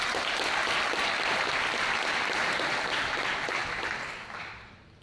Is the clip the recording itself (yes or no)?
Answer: yes